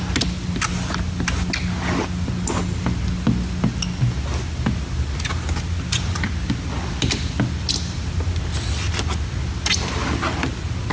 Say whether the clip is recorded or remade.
recorded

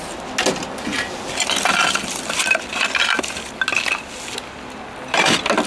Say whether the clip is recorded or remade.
recorded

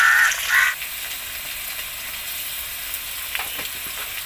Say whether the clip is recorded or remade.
recorded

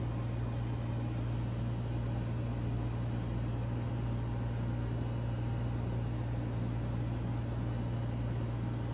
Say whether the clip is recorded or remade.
recorded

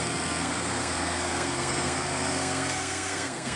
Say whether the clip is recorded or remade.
remade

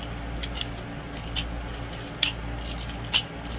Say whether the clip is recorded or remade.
recorded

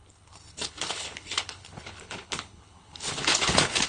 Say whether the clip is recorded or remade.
remade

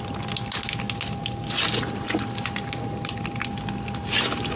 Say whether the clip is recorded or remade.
recorded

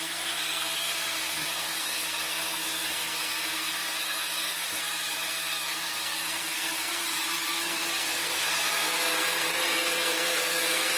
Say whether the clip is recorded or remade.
remade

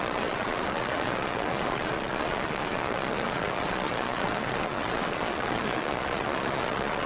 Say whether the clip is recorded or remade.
remade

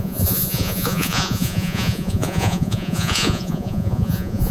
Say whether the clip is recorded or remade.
remade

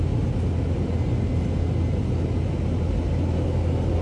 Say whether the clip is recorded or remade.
recorded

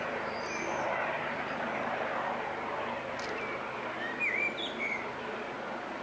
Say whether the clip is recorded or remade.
recorded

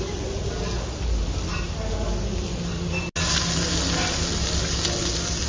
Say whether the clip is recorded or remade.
recorded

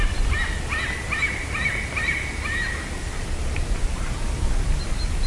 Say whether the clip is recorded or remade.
recorded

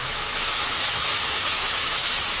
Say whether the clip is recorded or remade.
remade